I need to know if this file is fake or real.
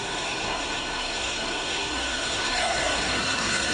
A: fake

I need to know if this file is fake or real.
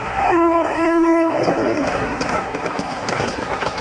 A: fake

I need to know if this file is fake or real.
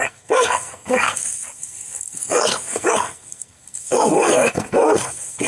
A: fake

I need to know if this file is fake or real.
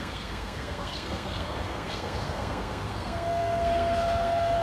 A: fake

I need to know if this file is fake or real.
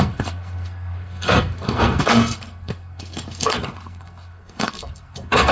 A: fake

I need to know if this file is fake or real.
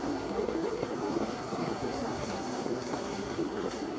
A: fake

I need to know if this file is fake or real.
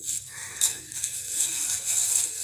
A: fake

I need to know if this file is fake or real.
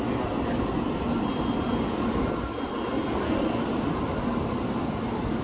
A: real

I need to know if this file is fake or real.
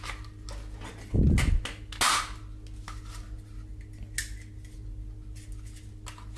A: real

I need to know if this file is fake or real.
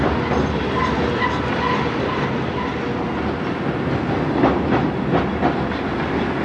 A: real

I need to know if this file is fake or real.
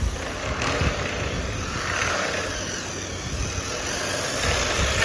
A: real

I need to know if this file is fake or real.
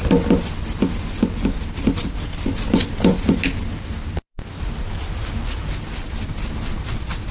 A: real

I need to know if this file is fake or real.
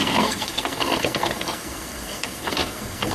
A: fake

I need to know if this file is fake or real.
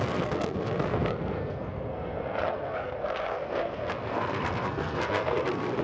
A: fake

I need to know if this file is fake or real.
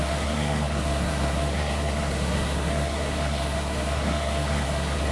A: fake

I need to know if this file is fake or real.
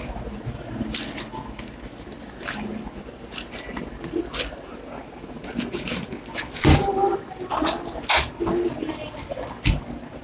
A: real